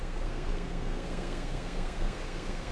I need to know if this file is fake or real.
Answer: fake